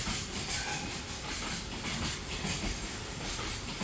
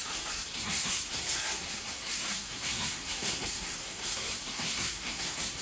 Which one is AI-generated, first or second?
second